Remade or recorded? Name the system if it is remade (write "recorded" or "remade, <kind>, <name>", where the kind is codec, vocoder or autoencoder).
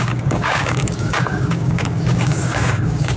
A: remade, codec, DAC